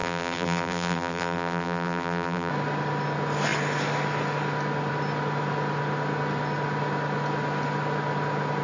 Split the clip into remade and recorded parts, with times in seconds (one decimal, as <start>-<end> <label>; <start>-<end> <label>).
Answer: 0.0-2.5 remade; 2.5-8.6 recorded